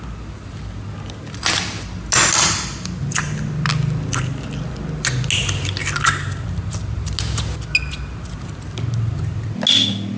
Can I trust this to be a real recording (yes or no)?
yes